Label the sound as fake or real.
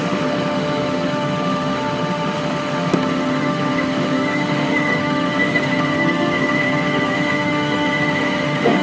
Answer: fake